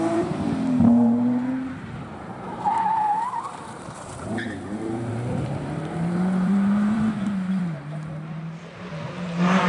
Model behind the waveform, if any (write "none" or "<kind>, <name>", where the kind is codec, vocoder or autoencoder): vocoder, BigVGAN v2